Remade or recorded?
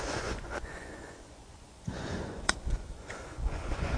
remade